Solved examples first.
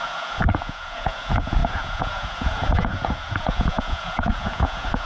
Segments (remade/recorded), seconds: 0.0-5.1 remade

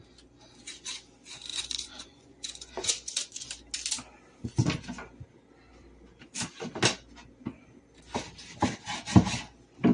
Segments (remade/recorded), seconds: 0.0-1.5 recorded; 1.5-3.5 remade; 3.5-9.9 recorded